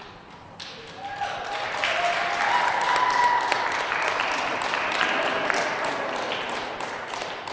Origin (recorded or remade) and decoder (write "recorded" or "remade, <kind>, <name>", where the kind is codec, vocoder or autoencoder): recorded